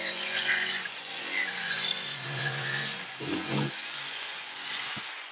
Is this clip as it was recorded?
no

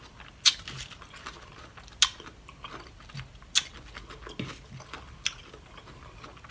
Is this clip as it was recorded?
yes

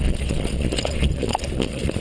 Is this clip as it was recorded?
no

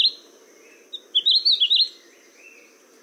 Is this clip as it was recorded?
yes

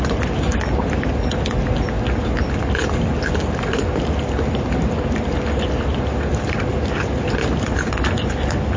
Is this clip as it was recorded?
yes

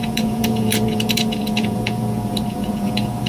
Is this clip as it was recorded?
no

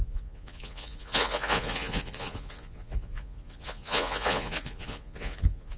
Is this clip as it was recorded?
no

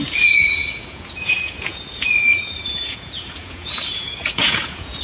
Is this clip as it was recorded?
no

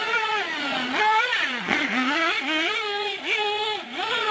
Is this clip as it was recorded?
no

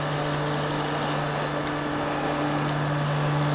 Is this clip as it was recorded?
yes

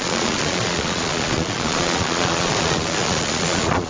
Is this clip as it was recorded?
no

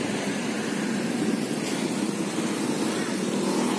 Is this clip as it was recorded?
yes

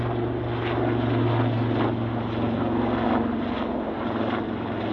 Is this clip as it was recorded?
yes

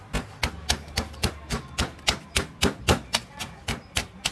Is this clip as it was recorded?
yes